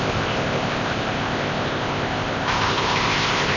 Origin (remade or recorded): remade